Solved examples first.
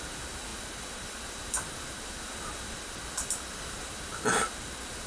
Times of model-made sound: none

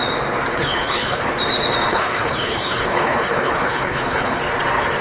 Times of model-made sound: 0.5-1.3; 1.9-4.4

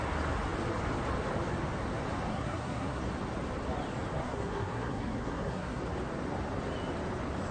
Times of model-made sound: 2.3-3.0; 4.2-5.8

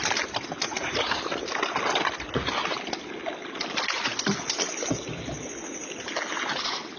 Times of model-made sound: 0.6-1.2

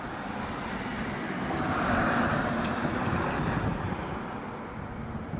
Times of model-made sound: none

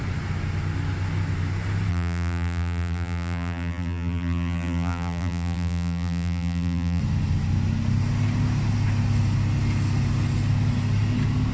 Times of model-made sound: 1.9-7.0